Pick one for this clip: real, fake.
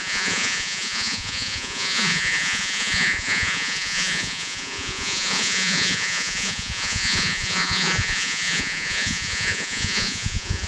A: fake